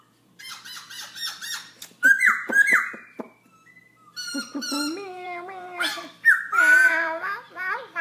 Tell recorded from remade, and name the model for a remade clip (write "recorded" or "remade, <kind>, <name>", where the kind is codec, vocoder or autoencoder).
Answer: remade, vocoder, BigVGAN v2